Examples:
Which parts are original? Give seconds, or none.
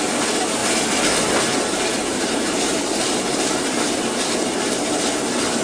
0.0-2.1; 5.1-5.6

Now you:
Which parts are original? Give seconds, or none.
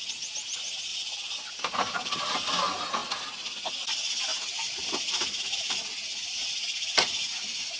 0.0-0.9; 2.6-4.3; 5.7-6.4